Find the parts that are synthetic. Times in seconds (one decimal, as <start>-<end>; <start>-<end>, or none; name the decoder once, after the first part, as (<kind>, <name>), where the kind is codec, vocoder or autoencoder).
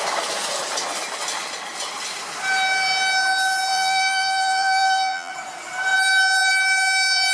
3.7-5.3 (vocoder, BigVGAN v2)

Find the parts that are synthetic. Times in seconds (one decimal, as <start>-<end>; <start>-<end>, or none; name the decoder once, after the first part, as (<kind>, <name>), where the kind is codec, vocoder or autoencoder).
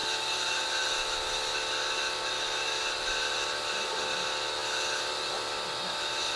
none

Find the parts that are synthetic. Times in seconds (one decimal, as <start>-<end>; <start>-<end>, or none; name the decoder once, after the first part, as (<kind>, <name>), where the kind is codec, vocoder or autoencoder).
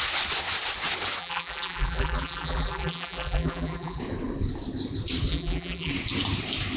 1.2-4.0 (vocoder, BigVGAN v2); 5.3-5.9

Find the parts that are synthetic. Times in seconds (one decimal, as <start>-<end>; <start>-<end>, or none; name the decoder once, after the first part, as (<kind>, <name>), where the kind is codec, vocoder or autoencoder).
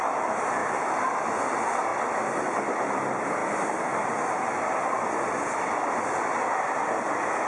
none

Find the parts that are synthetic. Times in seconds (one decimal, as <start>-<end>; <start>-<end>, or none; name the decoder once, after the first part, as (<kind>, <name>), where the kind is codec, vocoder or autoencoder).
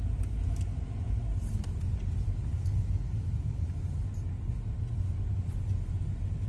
0.7-1.4 (vocoder, BigVGAN v2); 3.1-4.1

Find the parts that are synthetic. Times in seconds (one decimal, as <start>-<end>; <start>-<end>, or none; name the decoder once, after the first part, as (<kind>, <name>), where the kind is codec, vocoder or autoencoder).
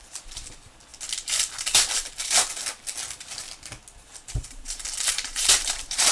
4.1-6.1 (vocoder, BigVGAN v2)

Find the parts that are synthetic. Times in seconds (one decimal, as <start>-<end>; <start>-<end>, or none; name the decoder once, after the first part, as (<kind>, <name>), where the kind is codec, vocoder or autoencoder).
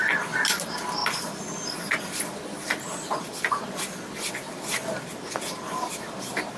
none